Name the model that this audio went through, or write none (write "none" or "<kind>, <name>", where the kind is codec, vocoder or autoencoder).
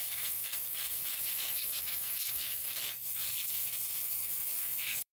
codec, SNAC